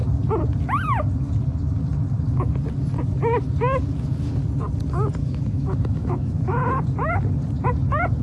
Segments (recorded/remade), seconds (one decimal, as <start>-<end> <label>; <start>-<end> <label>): 0.0-5.2 recorded; 5.2-6.8 remade; 6.8-8.2 recorded